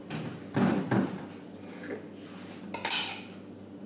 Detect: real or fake real